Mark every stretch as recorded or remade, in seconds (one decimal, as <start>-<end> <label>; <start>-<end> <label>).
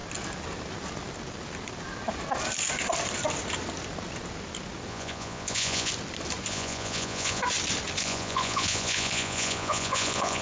0.0-4.9 recorded; 4.9-5.9 remade; 5.9-6.5 recorded; 6.5-7.4 remade; 7.4-8.0 recorded; 8.0-10.4 remade